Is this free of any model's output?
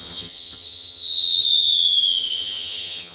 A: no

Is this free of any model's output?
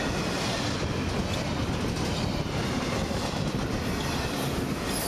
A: yes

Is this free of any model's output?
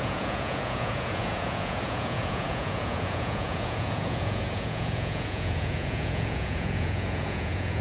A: no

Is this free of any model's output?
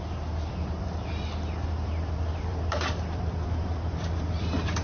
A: no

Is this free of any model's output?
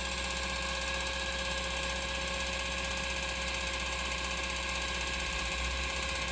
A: yes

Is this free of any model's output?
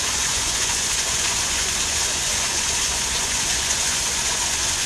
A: no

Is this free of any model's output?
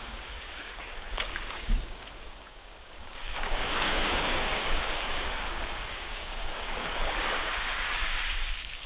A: no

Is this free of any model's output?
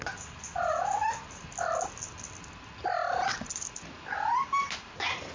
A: yes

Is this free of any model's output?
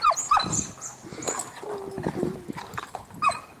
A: yes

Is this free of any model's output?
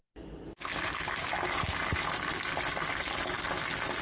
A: yes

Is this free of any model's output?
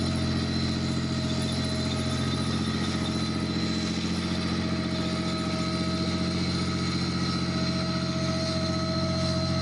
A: yes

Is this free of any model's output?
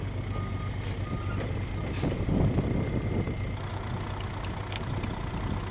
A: yes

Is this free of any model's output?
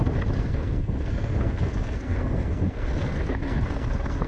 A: no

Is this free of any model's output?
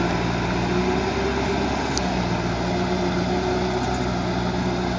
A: yes